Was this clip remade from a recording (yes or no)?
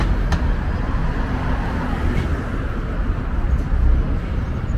no